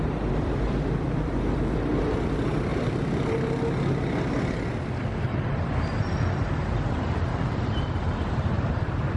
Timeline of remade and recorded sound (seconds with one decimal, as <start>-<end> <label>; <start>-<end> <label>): 0.0-2.7 remade; 2.7-5.2 recorded; 5.2-9.2 remade